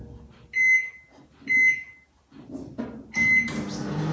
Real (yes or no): yes